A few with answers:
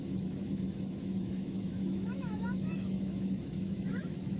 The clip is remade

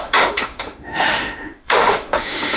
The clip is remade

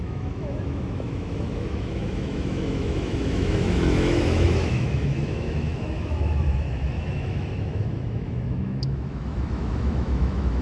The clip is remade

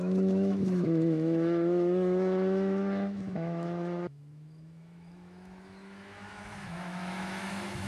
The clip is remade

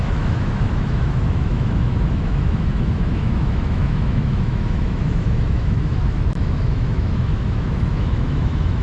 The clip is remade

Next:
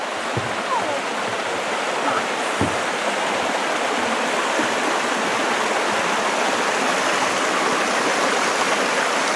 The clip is recorded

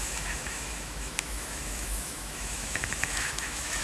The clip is remade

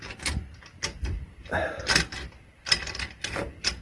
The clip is recorded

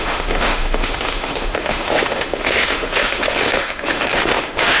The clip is remade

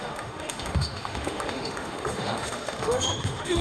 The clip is remade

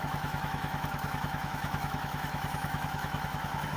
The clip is remade